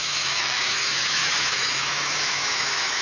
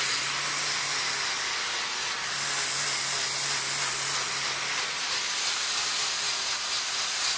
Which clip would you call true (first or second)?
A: second